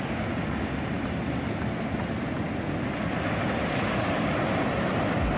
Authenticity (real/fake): real